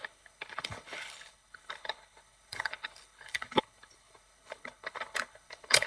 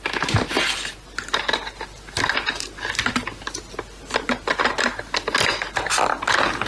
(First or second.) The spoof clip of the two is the first